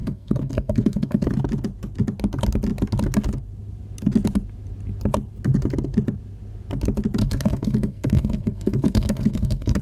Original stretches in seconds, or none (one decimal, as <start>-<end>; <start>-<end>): 1.3-7.2